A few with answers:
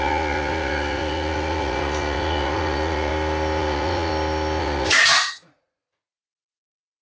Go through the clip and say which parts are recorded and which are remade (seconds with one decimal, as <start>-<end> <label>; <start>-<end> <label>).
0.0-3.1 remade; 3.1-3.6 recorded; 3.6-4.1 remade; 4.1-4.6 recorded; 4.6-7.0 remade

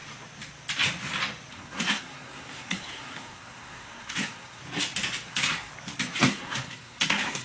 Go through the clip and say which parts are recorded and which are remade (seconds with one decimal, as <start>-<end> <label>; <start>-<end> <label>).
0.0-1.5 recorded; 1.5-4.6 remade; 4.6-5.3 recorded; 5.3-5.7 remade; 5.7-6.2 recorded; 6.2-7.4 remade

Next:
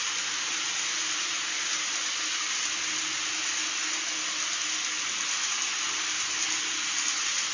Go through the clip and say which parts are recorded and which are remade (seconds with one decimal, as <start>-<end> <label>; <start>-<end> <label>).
0.0-7.5 recorded

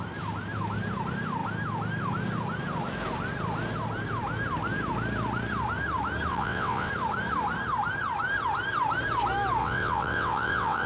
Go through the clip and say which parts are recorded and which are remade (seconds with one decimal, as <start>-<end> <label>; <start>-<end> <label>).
0.0-6.3 recorded; 6.3-6.9 remade; 6.9-9.6 recorded; 9.6-10.9 remade

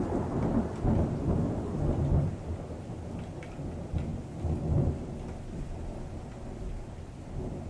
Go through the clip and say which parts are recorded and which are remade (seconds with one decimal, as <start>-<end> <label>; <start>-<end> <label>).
0.0-7.7 recorded

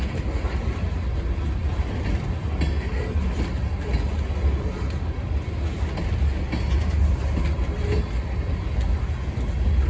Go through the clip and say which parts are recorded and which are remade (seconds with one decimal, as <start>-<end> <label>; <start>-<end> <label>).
0.0-9.9 recorded

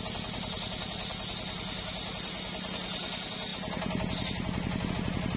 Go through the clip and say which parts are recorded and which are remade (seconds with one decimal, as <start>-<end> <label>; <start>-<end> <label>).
0.0-5.4 recorded